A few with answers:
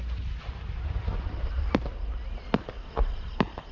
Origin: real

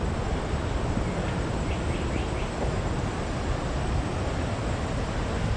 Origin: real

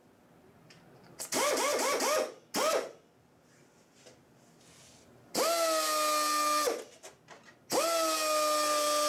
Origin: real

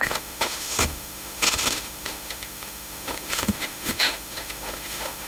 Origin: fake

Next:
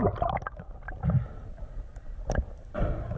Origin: real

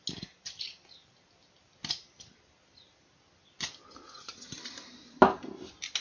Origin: real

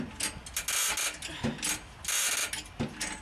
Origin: real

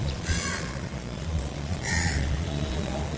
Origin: fake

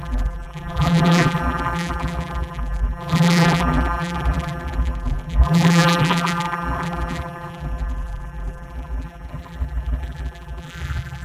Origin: fake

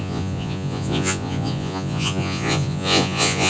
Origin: fake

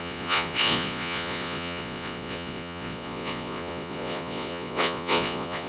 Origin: fake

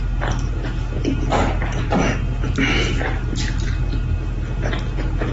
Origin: real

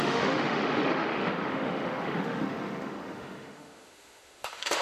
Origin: fake